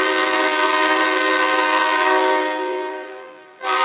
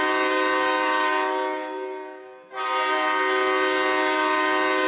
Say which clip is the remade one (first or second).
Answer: first